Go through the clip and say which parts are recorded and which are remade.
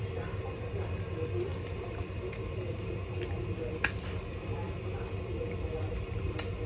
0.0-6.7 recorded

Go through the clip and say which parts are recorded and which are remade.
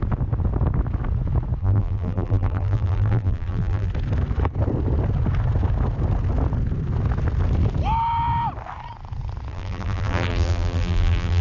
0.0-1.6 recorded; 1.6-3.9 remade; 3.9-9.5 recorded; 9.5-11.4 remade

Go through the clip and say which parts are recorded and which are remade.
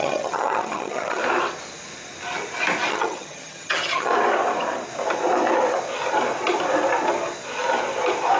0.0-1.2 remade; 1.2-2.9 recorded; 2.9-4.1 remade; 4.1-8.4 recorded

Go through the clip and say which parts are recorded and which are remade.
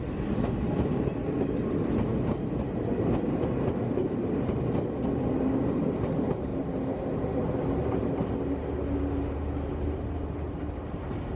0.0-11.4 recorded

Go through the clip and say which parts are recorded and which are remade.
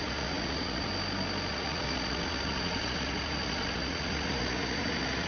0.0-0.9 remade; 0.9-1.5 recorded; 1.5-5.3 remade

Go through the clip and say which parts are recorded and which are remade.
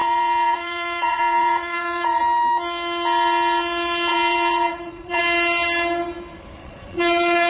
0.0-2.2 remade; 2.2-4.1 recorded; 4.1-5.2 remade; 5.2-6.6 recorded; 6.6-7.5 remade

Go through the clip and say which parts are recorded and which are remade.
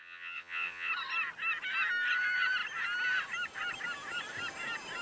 0.0-0.9 remade; 0.9-5.0 recorded